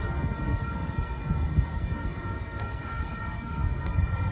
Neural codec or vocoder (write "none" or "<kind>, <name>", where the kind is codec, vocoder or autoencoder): codec, SNAC